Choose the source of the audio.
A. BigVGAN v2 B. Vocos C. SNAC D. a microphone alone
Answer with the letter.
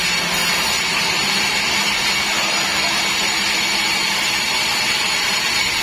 D